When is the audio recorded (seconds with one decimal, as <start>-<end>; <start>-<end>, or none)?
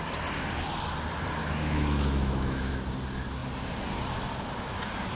0.0-1.4; 2.7-5.2